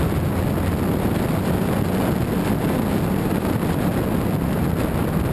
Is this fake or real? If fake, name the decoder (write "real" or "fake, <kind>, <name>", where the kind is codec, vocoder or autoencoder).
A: real